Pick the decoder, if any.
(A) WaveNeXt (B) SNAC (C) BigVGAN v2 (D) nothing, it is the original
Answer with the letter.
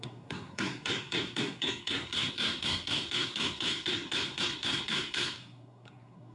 B